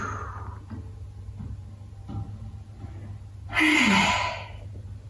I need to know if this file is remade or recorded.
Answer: recorded